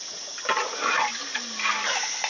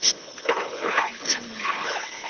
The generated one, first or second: second